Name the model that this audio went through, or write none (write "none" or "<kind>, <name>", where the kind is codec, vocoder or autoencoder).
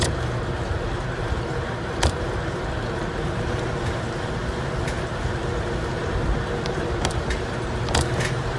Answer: vocoder, BigVGAN v2